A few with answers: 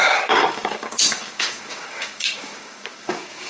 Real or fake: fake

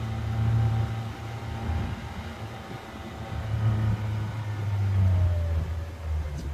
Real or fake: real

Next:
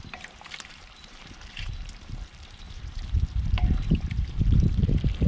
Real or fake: fake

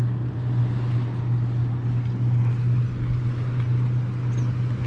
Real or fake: real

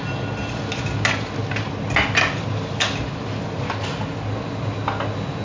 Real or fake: real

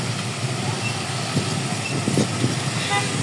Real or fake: real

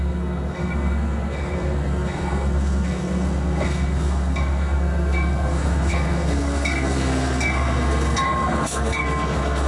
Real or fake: fake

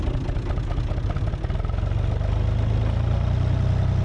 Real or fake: real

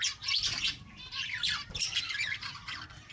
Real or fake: fake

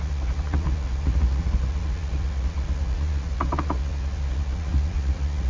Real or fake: fake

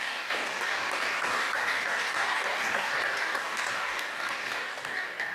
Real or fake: fake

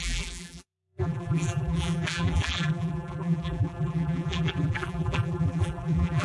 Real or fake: fake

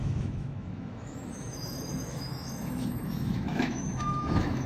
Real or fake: fake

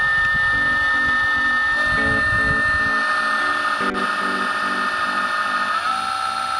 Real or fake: real